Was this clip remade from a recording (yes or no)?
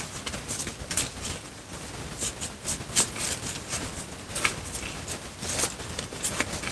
no